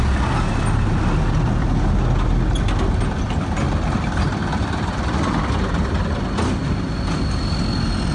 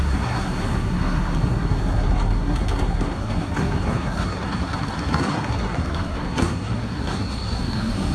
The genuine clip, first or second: first